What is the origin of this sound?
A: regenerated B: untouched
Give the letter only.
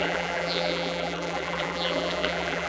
A